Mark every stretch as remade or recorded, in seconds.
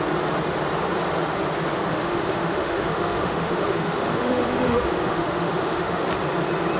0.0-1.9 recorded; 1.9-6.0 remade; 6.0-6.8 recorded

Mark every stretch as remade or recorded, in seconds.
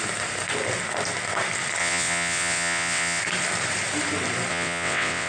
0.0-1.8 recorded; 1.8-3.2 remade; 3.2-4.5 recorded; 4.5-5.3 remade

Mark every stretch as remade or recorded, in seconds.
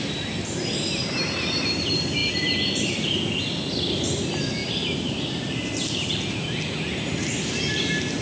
0.0-2.2 recorded; 2.2-3.0 remade; 3.0-4.6 recorded; 4.6-6.2 remade; 6.2-8.2 recorded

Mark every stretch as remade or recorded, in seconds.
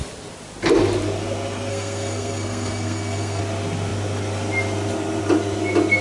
0.0-1.7 recorded; 1.7-3.4 remade; 3.4-6.0 recorded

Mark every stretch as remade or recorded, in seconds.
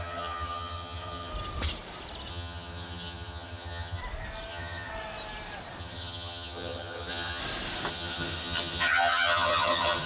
0.0-1.3 remade; 1.3-2.3 recorded; 2.3-4.0 remade; 4.0-4.5 recorded; 4.5-4.9 remade; 4.9-5.8 recorded; 5.8-7.4 remade; 7.4-7.9 recorded; 7.9-10.1 remade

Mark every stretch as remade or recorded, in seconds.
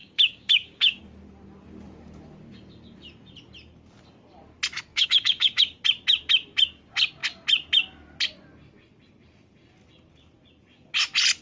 0.0-1.0 remade; 1.0-4.9 recorded; 4.9-5.8 remade; 5.8-11.4 recorded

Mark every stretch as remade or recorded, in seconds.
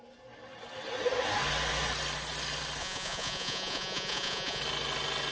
0.0-2.8 recorded; 2.8-4.6 remade; 4.6-5.3 recorded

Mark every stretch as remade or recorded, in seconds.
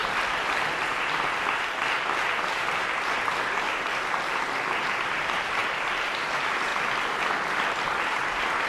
0.0-6.7 remade; 6.7-7.2 recorded; 7.2-8.7 remade